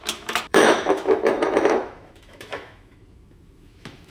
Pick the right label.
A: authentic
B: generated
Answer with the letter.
B